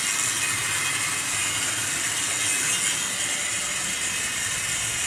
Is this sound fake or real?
real